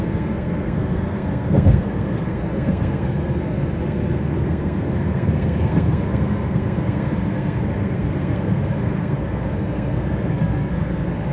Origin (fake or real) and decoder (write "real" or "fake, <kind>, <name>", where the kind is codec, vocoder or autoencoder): fake, codec, SNAC